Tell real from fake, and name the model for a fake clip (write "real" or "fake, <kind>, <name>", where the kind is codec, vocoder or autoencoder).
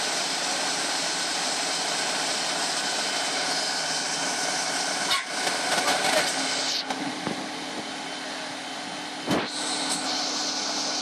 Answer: real